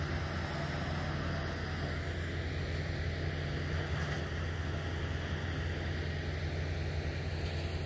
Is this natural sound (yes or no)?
yes